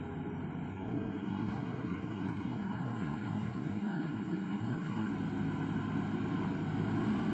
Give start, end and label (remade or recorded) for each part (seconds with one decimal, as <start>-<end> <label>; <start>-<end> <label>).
0.0-0.7 recorded; 0.7-5.1 remade; 5.1-7.3 recorded